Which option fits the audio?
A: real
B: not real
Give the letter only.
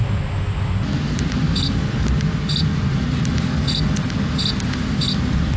A